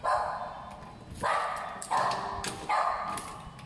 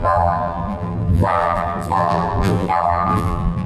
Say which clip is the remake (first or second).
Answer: second